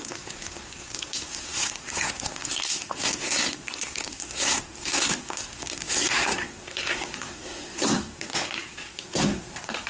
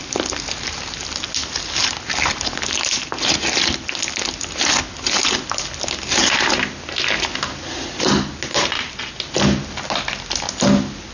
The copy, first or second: first